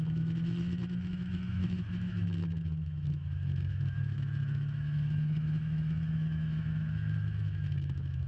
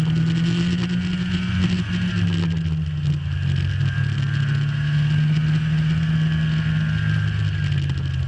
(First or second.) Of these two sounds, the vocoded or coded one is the first